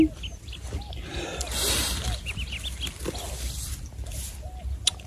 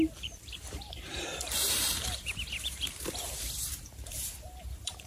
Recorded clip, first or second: first